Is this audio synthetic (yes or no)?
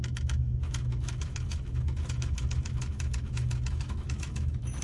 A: yes